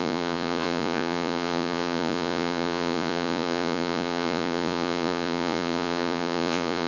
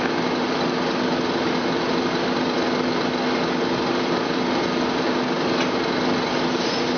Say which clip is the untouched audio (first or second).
second